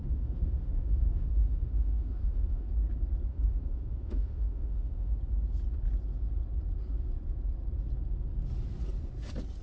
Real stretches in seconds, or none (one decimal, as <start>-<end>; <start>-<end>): 2.7-3.3; 5.2-9.6